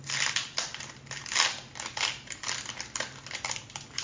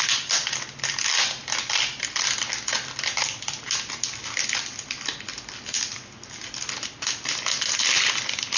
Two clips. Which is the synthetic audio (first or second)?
first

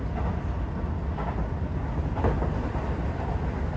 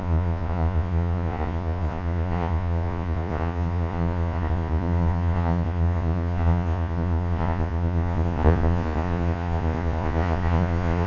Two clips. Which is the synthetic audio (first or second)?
second